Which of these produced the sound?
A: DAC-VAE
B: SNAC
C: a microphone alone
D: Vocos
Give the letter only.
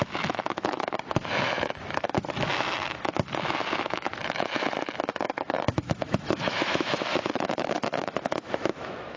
A